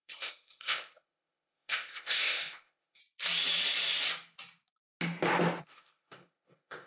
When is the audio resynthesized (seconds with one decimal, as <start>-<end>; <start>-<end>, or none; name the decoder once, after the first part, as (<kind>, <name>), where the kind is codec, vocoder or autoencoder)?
0.0-3.0 (codec, ZipCodec); 5.6-6.9